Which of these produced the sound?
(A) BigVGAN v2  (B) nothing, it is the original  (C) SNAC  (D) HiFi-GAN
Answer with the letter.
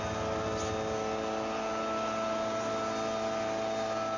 B